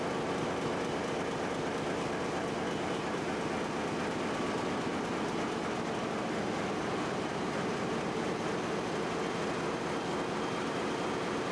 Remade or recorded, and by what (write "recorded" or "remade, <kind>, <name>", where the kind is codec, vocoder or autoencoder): recorded